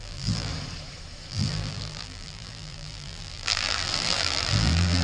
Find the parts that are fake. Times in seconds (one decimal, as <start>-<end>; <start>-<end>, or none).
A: 0.0-0.5; 1.3-5.0